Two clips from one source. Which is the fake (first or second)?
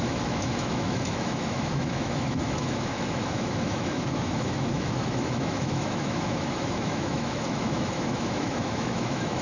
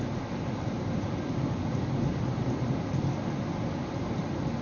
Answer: first